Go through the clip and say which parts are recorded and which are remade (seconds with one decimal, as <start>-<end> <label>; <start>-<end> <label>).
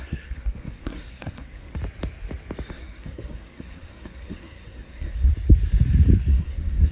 0.0-1.8 remade; 1.8-2.7 recorded; 2.7-5.3 remade; 5.3-6.3 recorded; 6.3-6.9 remade